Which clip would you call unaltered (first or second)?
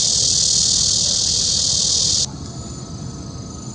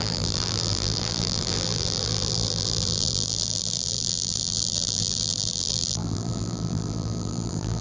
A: first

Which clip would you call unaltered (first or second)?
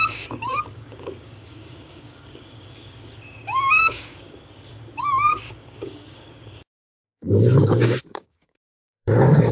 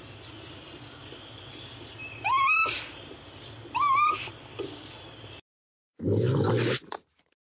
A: second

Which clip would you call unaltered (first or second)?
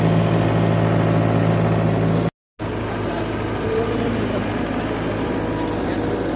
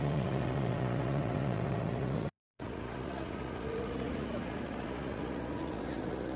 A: first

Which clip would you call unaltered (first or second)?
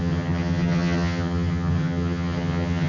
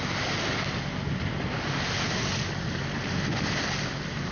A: second